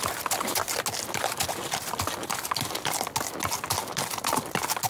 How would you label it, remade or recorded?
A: recorded